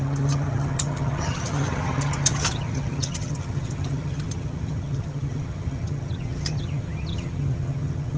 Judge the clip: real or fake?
fake